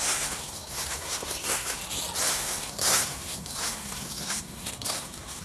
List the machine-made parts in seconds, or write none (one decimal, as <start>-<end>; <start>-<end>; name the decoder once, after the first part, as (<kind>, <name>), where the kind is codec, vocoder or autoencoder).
0.0-1.8 (codec, SNAC); 2.3-5.4